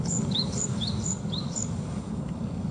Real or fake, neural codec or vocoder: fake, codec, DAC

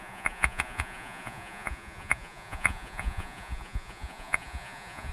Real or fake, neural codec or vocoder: fake, vocoder, Vocos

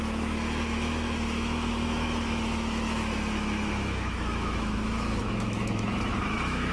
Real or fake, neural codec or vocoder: fake, autoencoder, DAC-VAE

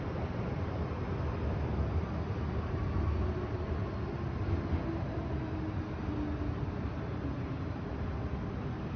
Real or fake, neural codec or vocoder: real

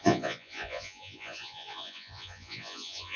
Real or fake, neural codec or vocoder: fake, vocoder, Vocos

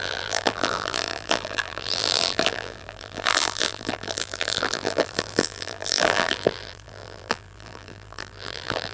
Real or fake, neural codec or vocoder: fake, vocoder, BigVGAN v2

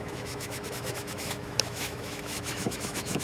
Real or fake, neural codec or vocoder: fake, autoencoder, DAC-VAE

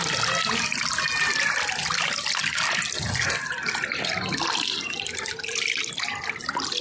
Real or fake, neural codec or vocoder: real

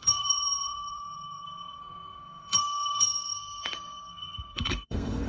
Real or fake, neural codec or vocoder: fake, codec, SNAC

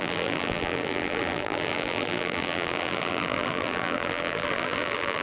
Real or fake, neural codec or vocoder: fake, vocoder, BigVGAN v2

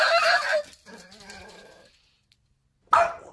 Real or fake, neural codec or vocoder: real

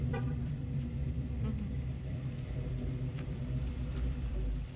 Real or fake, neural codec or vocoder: fake, vocoder, BigVGAN v2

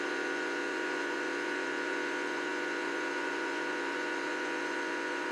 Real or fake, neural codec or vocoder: fake, vocoder, Vocos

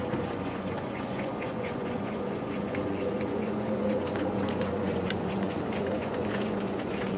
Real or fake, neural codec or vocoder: fake, vocoder, Vocos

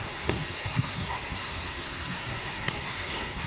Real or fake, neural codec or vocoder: fake, codec, SNAC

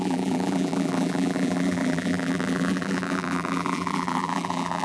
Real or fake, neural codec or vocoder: fake, vocoder, BigVGAN v2